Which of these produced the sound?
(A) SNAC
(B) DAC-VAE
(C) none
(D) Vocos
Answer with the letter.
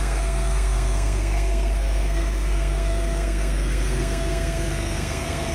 A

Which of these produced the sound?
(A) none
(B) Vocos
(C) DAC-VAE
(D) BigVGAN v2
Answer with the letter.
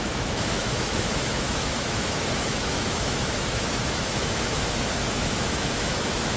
C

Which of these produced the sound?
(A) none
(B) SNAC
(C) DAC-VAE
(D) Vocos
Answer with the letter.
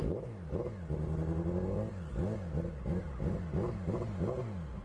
A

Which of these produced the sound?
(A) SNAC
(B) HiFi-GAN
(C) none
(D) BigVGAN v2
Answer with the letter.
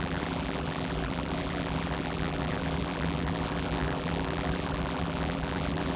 D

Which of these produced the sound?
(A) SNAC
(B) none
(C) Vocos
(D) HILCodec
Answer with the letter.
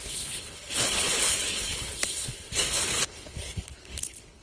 D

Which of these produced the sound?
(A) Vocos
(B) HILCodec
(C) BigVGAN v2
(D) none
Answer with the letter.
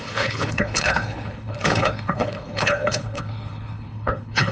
B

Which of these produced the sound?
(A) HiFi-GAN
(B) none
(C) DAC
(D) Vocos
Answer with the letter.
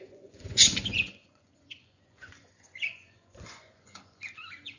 D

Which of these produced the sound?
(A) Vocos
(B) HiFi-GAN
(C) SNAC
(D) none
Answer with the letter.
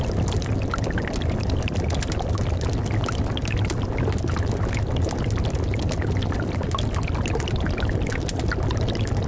D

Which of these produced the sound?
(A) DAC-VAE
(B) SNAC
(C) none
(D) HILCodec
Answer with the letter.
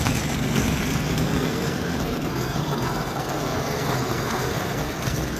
B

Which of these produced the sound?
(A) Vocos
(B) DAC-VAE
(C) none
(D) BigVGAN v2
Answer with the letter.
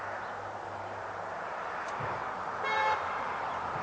D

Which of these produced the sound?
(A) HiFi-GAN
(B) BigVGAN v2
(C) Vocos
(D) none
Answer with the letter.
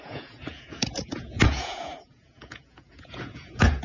C